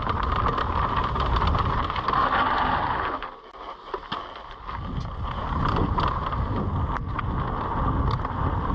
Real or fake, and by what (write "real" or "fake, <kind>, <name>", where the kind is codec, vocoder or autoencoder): real